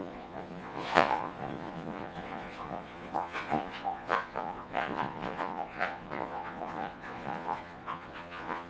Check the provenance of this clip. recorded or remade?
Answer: remade